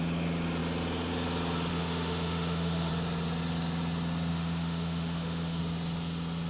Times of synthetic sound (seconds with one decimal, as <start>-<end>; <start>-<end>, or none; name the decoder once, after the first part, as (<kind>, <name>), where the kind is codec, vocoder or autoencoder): 1.7-2.9 (autoencoder, DAC-VAE); 4.3-5.6

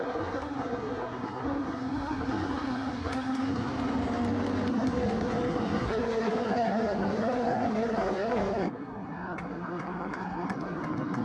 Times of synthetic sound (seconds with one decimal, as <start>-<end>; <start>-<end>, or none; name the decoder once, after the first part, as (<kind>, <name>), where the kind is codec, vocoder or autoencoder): 0.0-3.7 (codec, SNAC); 4.7-11.2

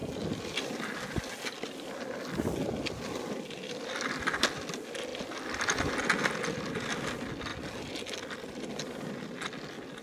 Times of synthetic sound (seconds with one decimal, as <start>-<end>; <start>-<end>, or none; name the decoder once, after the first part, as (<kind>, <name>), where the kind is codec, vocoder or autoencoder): none

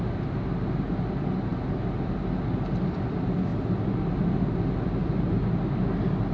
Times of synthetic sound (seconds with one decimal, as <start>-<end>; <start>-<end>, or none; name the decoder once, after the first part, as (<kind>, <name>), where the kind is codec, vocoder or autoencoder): none

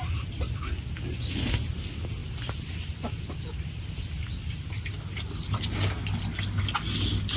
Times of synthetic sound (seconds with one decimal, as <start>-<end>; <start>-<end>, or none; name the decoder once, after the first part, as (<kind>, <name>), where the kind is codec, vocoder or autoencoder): none